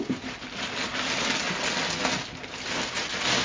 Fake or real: real